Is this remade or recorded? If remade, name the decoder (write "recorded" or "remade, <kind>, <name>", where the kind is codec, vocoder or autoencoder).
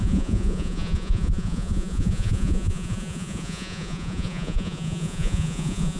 remade, vocoder, Vocos